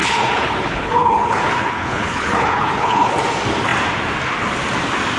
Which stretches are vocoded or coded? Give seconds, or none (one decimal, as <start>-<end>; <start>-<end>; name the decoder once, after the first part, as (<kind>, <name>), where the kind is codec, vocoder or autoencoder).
0.0-3.1 (codec, HILCodec)